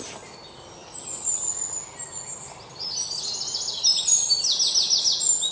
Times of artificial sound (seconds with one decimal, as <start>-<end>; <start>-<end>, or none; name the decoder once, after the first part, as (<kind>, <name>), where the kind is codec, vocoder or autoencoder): none